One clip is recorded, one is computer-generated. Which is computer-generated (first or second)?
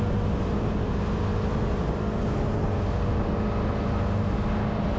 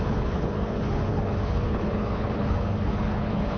second